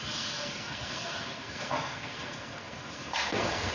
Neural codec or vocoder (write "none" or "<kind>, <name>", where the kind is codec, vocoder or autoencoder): codec, SNAC